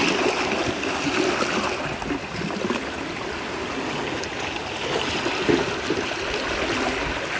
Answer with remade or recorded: recorded